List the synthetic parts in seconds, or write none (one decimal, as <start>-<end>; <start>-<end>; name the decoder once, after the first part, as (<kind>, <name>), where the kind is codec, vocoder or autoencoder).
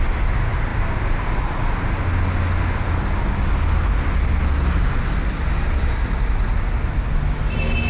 none